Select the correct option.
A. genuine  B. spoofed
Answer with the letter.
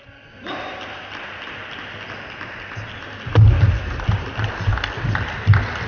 A